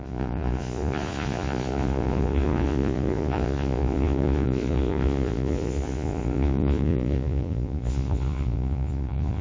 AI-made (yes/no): yes